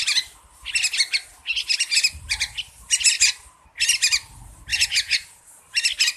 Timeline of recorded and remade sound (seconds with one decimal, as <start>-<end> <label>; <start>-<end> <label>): 0.0-4.7 recorded; 4.7-5.5 remade; 5.5-6.2 recorded